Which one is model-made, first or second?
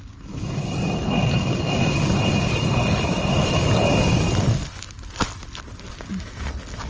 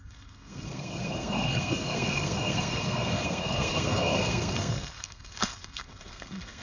second